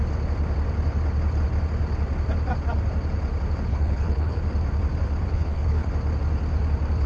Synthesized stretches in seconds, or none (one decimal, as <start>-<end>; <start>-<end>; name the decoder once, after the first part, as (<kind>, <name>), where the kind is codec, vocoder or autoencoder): 3.7-4.4 (codec, HILCodec); 5.3-5.9